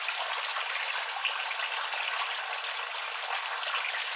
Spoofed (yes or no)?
no